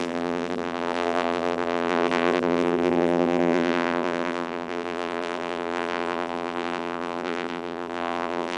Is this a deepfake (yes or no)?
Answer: yes